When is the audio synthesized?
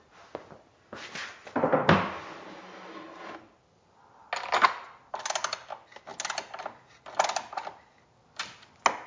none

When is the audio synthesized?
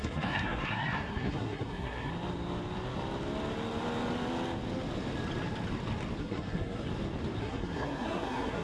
0.0-2.1 (codec, SNAC); 6.2-6.9; 7.4-8.6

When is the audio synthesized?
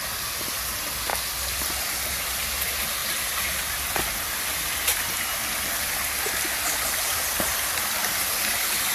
none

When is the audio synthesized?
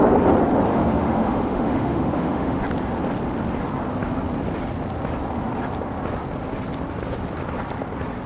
0.7-2.6 (autoencoder, DAC-VAE)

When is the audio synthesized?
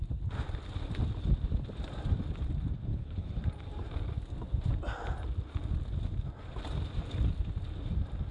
2.9-3.4 (codec, HILCodec)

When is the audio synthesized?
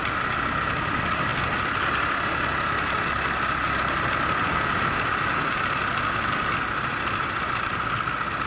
none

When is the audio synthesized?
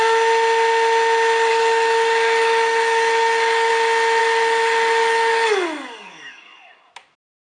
1.5-3.7 (codec, DAC); 4.2-6.9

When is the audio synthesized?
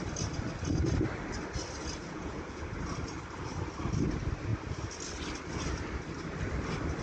2.0-2.6 (vocoder, Vocos)